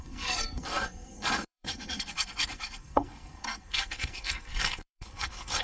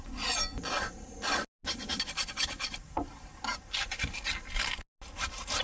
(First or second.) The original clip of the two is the second